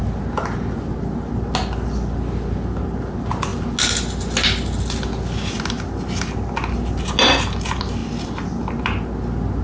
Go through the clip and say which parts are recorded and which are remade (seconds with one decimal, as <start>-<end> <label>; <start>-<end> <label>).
0.0-9.6 recorded